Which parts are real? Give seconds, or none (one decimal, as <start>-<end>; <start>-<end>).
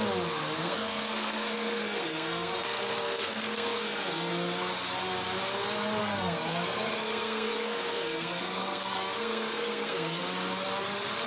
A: 0.0-0.6; 4.3-6.0; 10.2-11.3